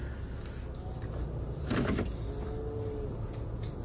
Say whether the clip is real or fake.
real